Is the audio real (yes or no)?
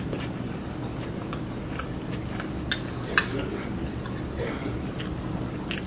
yes